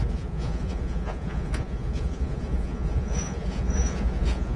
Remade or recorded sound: remade